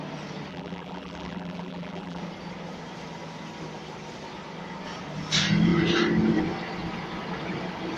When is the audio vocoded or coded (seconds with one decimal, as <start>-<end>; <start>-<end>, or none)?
0.5-2.2